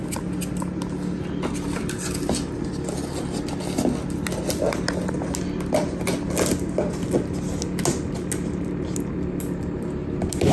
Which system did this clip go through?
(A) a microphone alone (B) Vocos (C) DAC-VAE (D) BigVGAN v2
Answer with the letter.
A